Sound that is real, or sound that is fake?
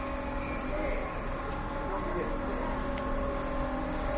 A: real